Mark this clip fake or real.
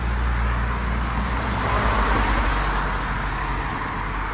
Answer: real